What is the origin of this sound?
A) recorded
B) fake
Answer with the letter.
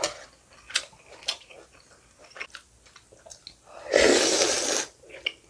A